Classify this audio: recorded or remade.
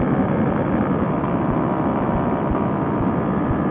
recorded